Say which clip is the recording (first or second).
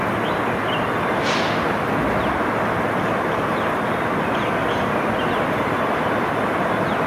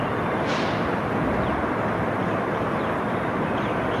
first